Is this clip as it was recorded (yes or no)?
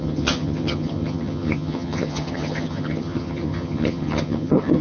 no